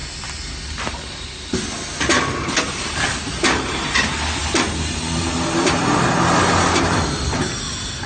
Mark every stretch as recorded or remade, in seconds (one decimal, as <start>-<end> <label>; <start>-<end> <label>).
0.0-2.0 recorded; 2.0-8.1 remade